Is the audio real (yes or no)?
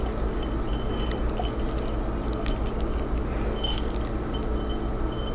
yes